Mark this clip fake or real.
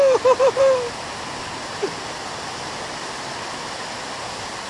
real